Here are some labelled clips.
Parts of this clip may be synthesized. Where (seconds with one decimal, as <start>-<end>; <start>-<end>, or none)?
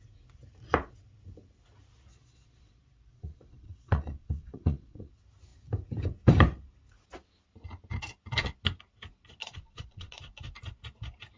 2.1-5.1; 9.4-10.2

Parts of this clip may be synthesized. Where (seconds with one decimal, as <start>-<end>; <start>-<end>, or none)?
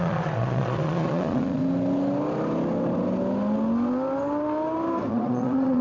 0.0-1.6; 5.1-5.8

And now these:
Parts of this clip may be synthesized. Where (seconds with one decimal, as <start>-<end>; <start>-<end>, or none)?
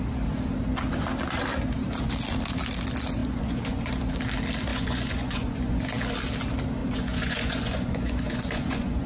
3.2-4.0; 4.7-5.8; 6.8-9.1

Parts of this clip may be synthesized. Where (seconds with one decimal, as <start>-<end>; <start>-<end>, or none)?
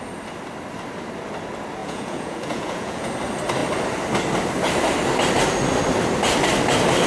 1.8-3.1